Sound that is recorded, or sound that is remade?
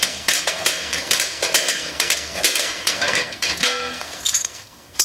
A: remade